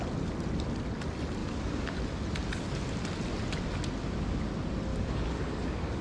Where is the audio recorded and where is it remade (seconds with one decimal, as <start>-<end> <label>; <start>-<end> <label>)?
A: 0.0-1.4 recorded; 1.4-2.0 remade; 2.0-4.9 recorded; 4.9-6.0 remade